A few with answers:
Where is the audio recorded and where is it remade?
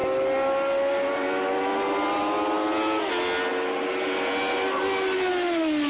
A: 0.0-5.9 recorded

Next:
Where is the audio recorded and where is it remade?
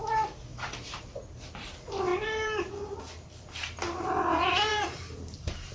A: 0.0-0.5 recorded; 0.5-1.0 remade; 1.0-2.1 recorded; 2.1-3.0 remade; 3.0-4.7 recorded; 4.7-5.7 remade